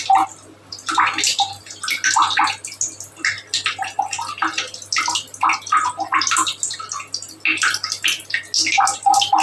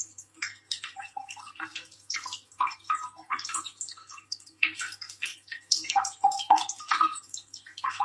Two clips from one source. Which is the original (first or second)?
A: first